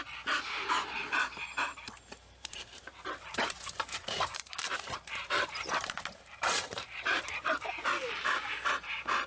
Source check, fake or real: fake